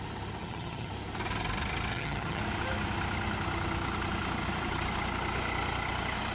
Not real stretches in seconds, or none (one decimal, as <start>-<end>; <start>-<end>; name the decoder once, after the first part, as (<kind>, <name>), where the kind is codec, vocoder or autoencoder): 0.4-0.9 (vocoder, HiFi-GAN); 1.9-2.4